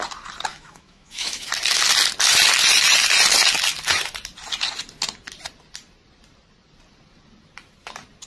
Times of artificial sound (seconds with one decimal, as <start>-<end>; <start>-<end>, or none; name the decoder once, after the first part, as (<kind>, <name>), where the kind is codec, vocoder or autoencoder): 0.5-1.5 (autoencoder, DAC-VAE)